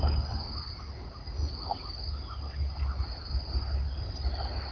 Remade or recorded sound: recorded